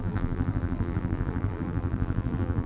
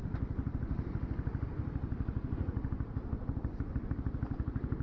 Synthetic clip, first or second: first